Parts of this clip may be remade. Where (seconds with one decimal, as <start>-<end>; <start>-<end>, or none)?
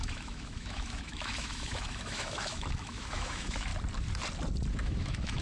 0.0-3.7; 4.7-5.4